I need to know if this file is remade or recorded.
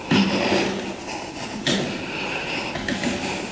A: recorded